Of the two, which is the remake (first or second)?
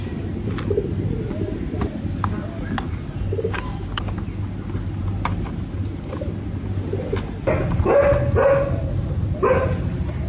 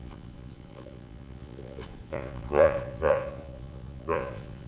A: second